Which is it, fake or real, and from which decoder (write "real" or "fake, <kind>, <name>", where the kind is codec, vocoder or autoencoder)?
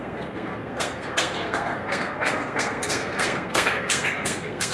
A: fake, codec, SNAC